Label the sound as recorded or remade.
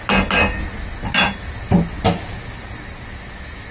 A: recorded